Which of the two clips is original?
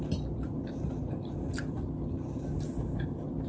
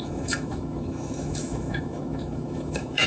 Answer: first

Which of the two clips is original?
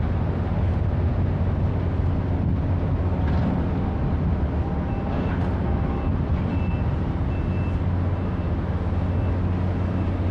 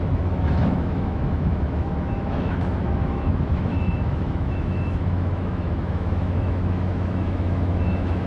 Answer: first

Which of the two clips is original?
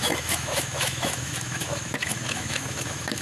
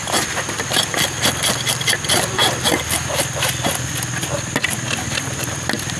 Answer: second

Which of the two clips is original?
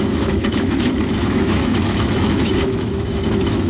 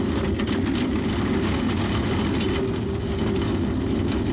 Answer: second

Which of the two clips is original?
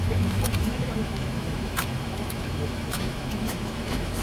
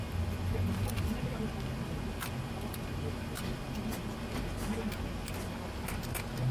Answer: second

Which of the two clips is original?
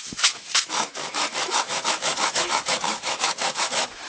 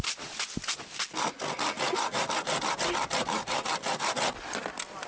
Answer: second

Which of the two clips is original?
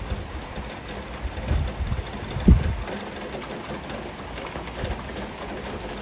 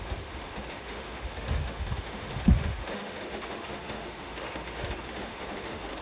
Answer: first